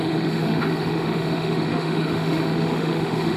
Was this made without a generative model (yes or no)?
no